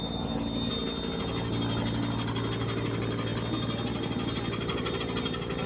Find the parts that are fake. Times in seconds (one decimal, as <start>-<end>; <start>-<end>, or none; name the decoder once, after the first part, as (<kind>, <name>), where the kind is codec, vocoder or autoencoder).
0.0-0.7 (codec, DAC)